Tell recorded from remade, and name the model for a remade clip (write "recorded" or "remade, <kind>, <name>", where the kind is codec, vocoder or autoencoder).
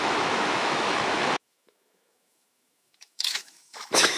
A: remade, autoencoder, DAC-VAE